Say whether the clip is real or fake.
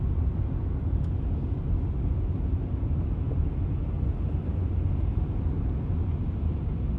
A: real